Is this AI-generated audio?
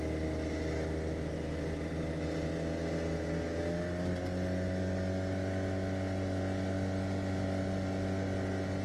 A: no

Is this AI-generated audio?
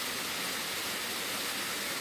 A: no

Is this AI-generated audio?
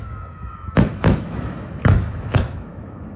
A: yes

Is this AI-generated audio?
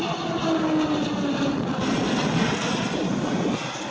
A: no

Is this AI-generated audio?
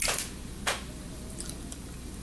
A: yes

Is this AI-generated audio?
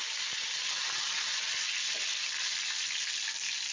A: no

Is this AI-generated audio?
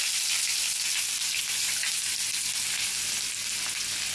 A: no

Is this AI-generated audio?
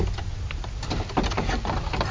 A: no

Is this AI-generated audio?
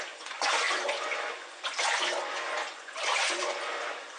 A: yes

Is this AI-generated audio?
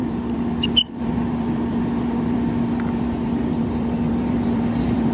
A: yes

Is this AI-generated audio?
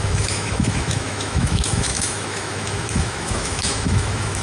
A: yes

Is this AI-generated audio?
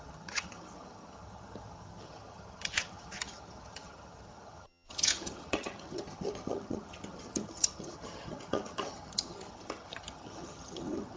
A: yes